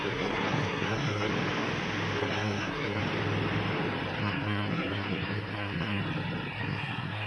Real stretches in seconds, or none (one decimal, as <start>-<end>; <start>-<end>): 1.3-2.2; 3.0-4.2; 6.0-6.6